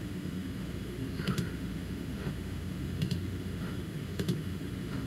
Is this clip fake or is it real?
fake